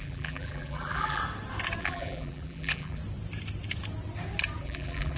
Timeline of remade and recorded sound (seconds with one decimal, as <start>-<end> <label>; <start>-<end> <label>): 0.0-1.2 remade; 1.2-1.8 recorded; 1.8-3.0 remade; 3.0-4.6 recorded; 4.6-5.2 remade